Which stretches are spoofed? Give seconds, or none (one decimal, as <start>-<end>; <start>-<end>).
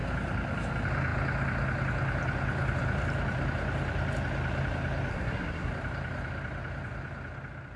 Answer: 5.1-5.7